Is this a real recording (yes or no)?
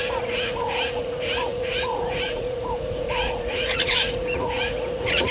no